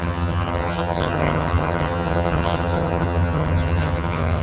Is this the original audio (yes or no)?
no